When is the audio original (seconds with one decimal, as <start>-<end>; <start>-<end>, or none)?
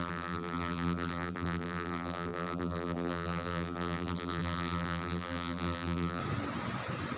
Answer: 6.2-7.2